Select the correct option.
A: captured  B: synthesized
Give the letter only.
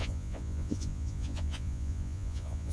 B